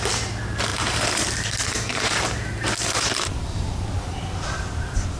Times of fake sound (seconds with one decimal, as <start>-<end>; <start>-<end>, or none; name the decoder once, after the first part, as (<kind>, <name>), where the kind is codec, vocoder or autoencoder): 0.7-3.8 (vocoder, BigVGAN v2)